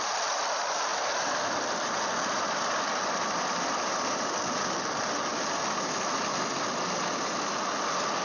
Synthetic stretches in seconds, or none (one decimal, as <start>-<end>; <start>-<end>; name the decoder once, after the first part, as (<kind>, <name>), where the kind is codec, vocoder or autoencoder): 0.9-4.3 (vocoder, BigVGAN v2)